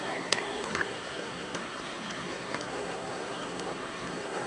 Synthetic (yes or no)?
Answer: yes